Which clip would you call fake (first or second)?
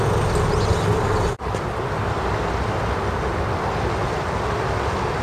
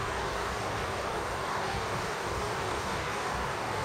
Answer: second